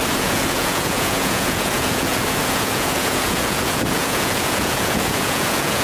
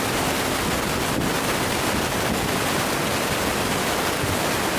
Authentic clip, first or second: second